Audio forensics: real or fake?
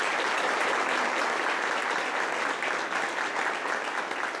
real